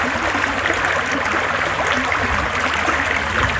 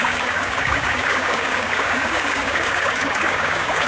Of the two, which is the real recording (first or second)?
first